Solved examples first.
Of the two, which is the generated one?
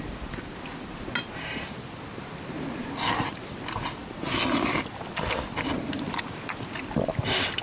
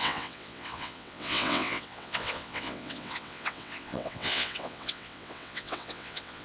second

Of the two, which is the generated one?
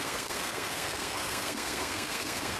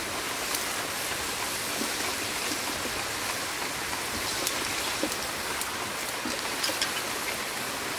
first